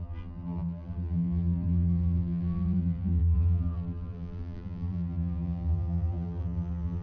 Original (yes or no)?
no